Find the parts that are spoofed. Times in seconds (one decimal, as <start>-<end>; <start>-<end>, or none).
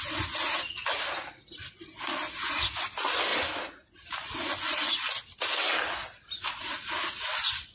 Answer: 3.3-4.5; 6.0-6.6